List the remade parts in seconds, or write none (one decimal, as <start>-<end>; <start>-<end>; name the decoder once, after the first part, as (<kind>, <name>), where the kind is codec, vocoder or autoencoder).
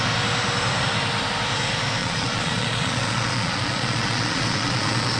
2.0-5.2 (vocoder, Vocos)